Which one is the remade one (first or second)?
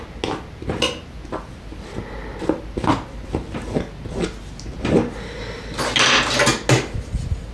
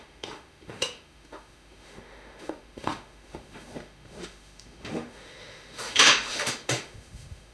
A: second